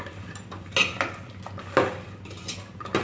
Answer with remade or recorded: recorded